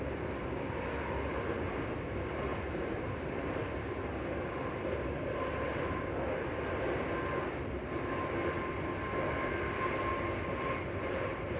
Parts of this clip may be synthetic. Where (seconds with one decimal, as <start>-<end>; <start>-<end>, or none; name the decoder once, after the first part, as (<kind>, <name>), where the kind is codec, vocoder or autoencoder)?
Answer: none